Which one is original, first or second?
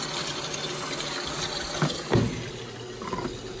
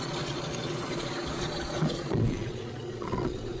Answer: first